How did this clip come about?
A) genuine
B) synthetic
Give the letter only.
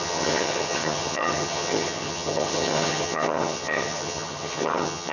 B